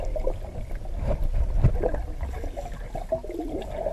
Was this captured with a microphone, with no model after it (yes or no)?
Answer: yes